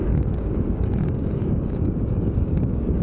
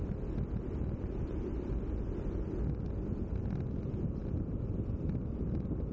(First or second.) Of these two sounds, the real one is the second